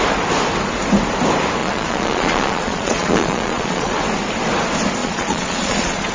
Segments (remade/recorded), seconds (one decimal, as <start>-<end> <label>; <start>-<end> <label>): 0.0-1.6 recorded; 1.6-4.0 remade; 4.0-5.0 recorded; 5.0-6.1 remade